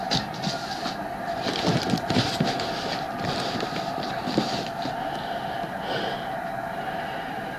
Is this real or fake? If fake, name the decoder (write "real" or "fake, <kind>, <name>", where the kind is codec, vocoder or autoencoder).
real